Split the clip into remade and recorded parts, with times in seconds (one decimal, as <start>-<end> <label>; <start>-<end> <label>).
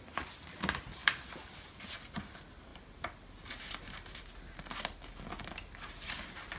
0.0-6.6 recorded